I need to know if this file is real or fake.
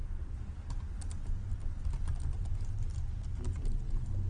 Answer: real